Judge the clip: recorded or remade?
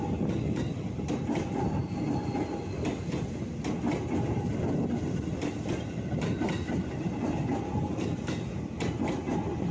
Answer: recorded